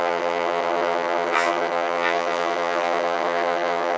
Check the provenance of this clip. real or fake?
fake